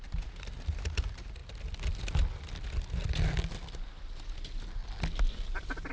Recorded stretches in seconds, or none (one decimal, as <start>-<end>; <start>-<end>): 1.4-3.7; 4.8-5.9